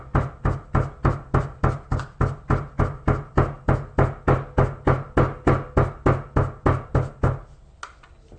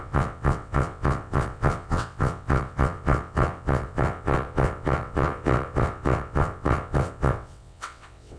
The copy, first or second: second